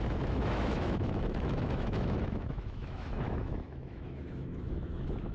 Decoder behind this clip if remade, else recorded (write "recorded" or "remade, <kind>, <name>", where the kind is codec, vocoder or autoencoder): remade, autoencoder, DAC-VAE